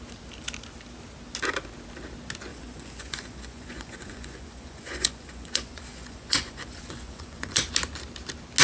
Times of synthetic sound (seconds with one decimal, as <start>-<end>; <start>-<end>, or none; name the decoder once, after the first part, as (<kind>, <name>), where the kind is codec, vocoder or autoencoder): 2.5-7.7 (vocoder, Vocos)